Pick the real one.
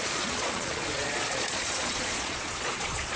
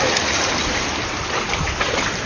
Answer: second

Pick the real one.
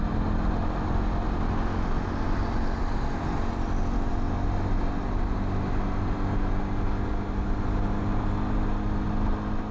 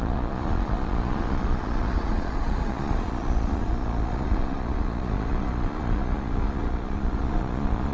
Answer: first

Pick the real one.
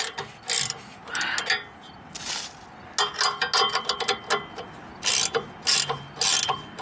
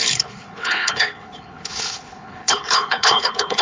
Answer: first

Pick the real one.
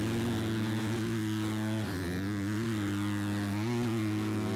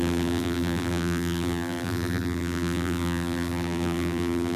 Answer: first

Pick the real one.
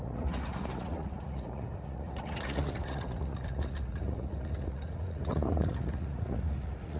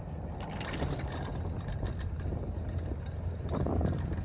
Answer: second